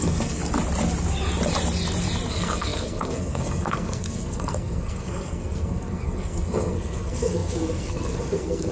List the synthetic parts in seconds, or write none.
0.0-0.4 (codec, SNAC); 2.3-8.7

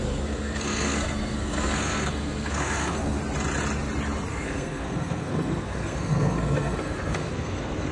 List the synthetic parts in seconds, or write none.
0.0-3.2 (codec, SNAC); 4.3-7.9

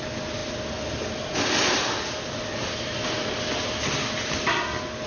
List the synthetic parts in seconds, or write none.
none

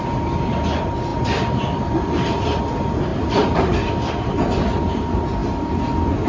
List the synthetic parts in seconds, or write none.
1.1-2.6 (vocoder, BigVGAN v2); 3.1-3.9

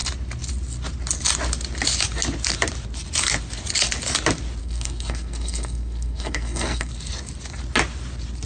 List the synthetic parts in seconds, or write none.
4.6-6.9 (codec, SNAC)

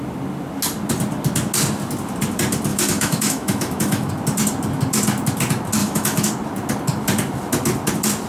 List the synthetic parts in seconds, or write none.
2.7-4.1 (autoencoder, DAC-VAE); 5.8-6.3